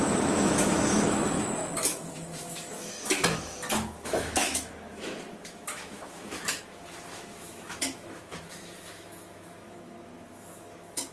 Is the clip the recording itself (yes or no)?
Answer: no